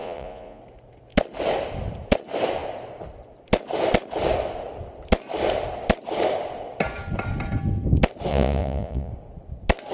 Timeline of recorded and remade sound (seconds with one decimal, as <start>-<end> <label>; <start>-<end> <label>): 0.0-0.6 remade; 0.6-8.3 recorded; 8.3-9.1 remade; 9.1-9.9 recorded